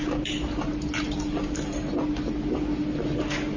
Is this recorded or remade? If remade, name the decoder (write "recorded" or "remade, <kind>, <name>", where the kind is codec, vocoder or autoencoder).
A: recorded